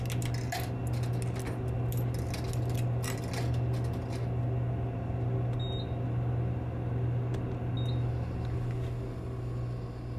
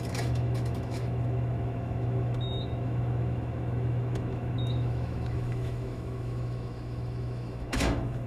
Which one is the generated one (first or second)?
second